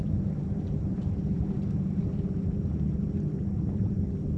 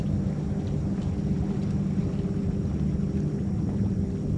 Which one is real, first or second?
second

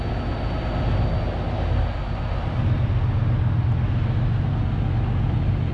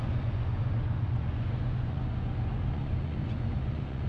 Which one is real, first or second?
first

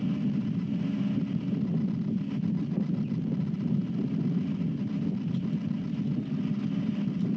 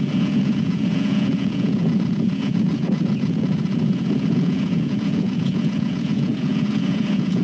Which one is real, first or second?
first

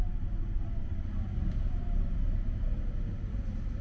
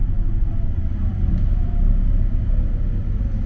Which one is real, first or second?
second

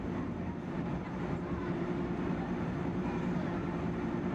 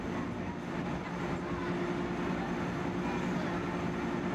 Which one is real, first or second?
second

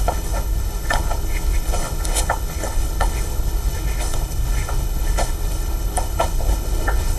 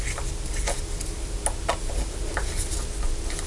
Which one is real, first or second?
second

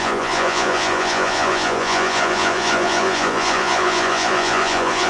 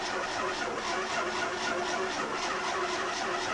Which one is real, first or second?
second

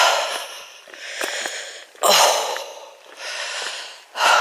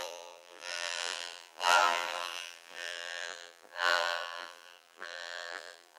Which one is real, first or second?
first